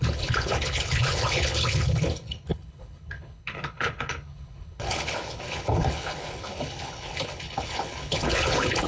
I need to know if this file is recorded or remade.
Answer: remade